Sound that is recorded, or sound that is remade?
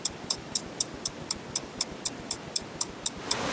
recorded